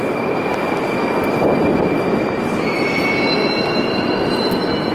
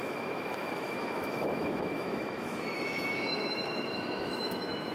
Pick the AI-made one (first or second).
second